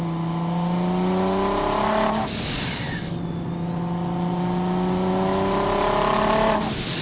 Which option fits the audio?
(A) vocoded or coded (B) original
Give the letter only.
B